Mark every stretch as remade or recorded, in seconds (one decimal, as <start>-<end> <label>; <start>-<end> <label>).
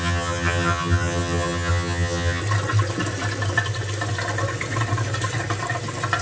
0.0-2.4 remade; 2.4-6.2 recorded